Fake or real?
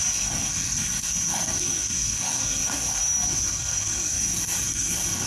fake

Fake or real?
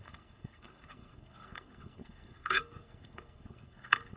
fake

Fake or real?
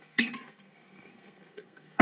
fake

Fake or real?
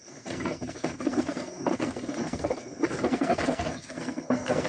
fake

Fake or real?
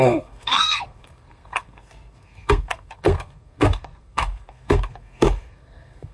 fake